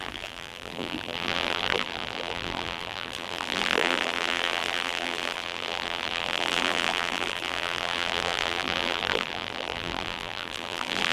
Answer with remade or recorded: remade